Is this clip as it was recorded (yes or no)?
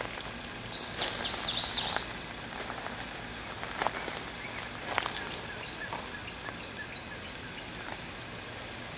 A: yes